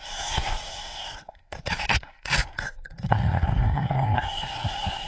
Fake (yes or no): yes